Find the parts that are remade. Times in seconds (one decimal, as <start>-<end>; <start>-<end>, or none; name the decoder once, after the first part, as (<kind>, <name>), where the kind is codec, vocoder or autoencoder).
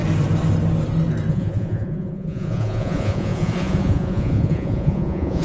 1.3-5.4 (vocoder, Vocos)